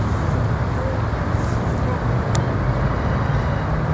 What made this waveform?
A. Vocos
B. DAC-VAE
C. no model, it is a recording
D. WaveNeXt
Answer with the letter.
C